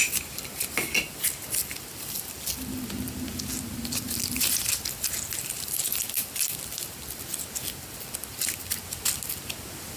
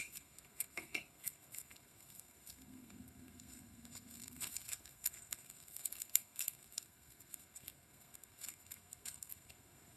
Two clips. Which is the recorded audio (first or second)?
first